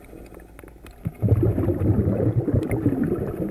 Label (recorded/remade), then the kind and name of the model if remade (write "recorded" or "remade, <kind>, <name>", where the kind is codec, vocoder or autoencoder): recorded